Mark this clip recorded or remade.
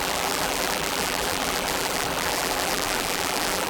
remade